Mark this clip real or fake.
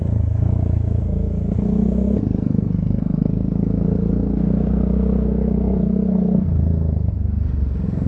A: fake